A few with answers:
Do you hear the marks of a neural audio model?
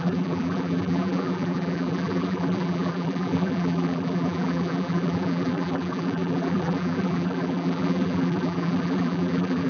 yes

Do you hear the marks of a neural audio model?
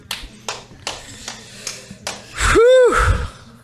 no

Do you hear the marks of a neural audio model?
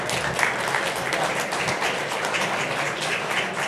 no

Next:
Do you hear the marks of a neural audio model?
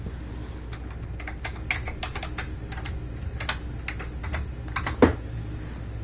no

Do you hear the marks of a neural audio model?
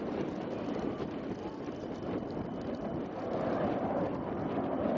yes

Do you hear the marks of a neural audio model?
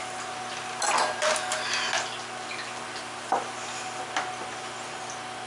no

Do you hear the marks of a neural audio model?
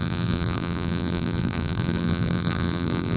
yes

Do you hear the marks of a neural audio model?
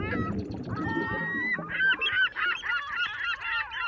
no